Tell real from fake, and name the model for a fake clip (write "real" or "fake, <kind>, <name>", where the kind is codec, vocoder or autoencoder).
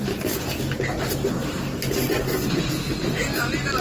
real